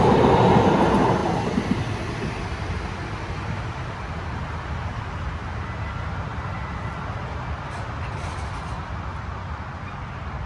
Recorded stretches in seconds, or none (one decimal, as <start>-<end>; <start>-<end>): 0.0-10.5